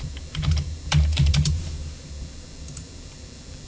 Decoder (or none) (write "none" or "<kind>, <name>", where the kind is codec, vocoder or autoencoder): vocoder, BigVGAN v2